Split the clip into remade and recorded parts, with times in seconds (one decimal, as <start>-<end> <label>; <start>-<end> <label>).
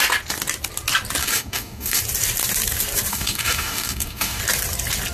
0.0-1.2 recorded; 1.2-2.0 remade; 2.0-3.1 recorded; 3.1-4.4 remade; 4.4-5.1 recorded